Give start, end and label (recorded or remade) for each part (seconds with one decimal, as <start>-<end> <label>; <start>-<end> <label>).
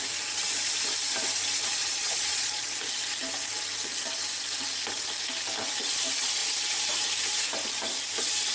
0.0-1.8 recorded; 1.8-3.2 remade; 3.2-8.5 recorded